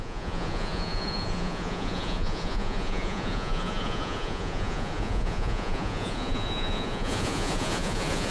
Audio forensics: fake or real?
fake